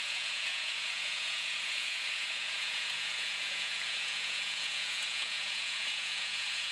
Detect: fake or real fake